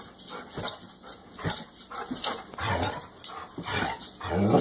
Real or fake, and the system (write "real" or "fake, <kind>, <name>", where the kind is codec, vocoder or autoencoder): real